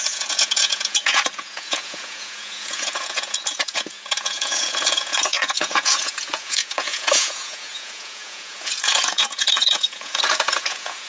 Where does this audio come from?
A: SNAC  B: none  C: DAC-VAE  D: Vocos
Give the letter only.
D